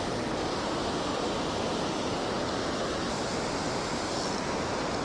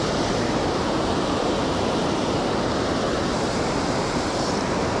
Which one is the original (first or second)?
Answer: first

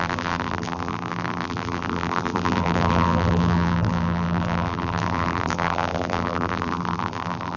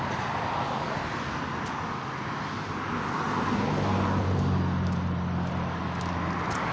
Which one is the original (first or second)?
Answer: second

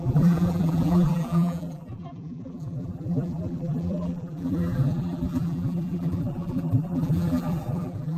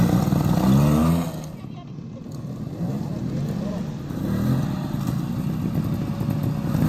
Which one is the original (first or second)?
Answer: second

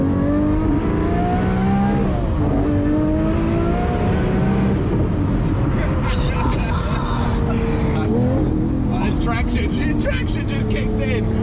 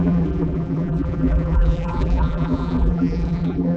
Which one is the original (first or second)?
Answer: first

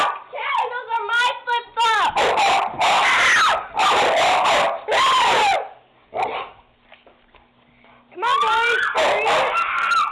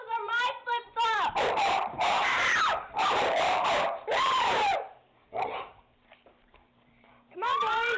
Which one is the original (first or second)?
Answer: first